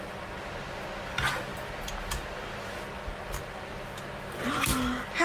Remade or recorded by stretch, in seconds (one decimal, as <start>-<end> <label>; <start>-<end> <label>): 0.0-5.2 recorded

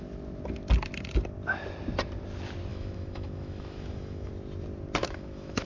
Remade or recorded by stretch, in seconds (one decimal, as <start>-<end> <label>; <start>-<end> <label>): 0.0-2.7 recorded; 2.7-4.3 remade; 4.3-5.0 recorded; 5.0-5.7 remade

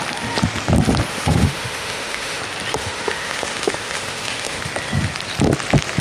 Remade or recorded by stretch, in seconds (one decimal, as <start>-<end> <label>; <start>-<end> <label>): 0.0-1.1 recorded; 1.1-2.4 remade; 2.4-2.8 recorded; 2.8-4.6 remade; 4.6-6.0 recorded

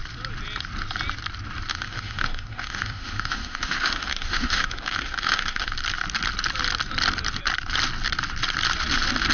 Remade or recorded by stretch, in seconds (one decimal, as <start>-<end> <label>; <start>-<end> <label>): 0.0-1.7 recorded; 1.7-5.7 remade; 5.7-9.3 recorded